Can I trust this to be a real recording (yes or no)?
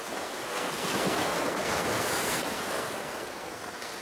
no